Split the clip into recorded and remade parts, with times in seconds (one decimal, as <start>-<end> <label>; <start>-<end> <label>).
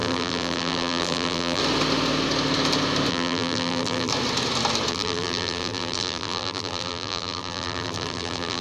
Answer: 0.0-1.6 remade; 1.6-3.1 recorded; 3.1-4.1 remade; 4.1-4.9 recorded; 4.9-8.6 remade